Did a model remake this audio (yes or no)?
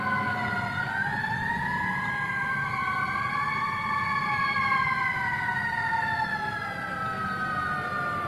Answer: no